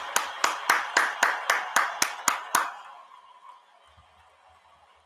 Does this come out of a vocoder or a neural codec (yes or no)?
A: no